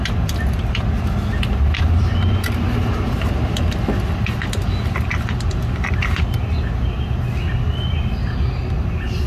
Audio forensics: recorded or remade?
recorded